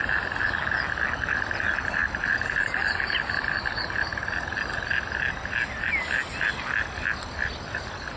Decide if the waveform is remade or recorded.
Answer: recorded